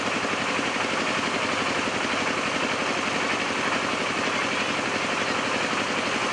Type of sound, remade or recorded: recorded